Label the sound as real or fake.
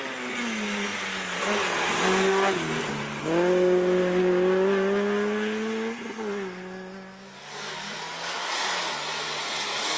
real